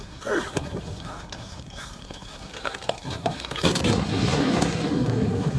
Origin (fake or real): fake